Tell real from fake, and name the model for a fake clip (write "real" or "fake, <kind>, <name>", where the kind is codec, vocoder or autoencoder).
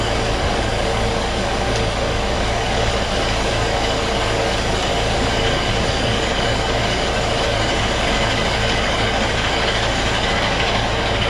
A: fake, codec, DAC